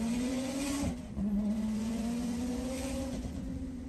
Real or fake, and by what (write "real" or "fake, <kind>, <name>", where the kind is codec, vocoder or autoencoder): fake, vocoder, Vocos